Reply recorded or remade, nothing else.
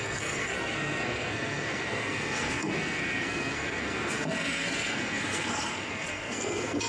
remade